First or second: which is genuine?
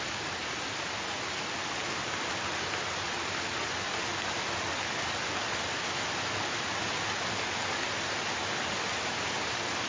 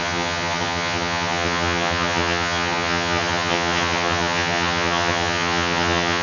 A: first